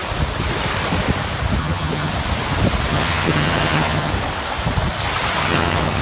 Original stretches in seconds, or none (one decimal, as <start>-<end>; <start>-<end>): 0.0-1.6; 2.1-2.9; 4.1-5.4